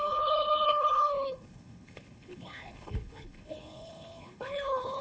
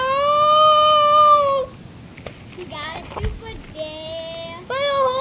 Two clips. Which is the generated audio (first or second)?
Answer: first